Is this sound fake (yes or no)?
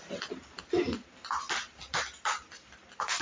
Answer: no